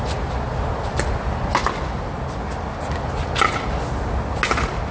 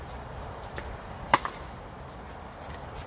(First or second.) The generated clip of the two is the second